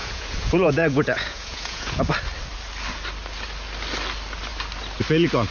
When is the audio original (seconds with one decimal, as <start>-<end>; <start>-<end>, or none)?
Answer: 2.0-5.5